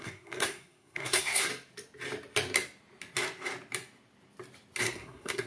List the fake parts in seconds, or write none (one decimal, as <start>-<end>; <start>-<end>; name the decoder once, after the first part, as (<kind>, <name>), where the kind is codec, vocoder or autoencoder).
0.0-1.5 (codec, SNAC); 4.8-5.5